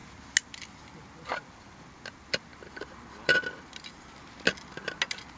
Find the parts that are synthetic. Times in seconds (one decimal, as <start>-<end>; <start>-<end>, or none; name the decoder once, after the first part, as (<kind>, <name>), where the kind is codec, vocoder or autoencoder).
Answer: none